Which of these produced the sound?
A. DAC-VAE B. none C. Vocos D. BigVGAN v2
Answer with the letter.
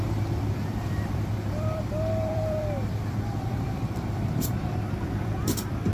D